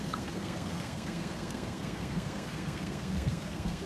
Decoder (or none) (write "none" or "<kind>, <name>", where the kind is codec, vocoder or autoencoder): codec, SNAC